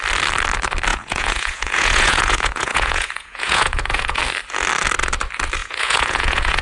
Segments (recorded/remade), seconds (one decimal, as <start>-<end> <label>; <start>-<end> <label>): 0.0-0.9 recorded; 0.9-4.2 remade; 4.2-5.6 recorded; 5.6-6.6 remade